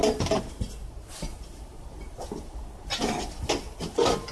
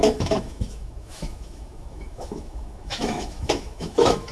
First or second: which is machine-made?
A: second